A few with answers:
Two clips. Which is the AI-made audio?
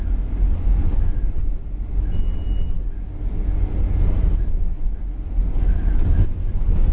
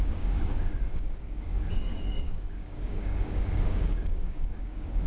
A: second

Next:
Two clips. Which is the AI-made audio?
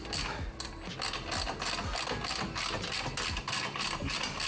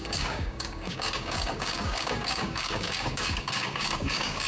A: second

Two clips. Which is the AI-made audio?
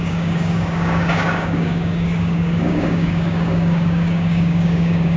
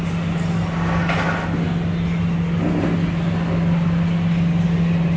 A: first